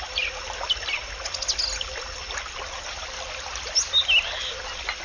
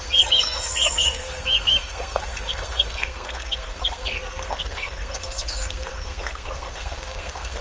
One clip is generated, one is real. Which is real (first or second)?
first